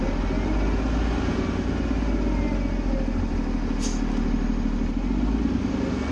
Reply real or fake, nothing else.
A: real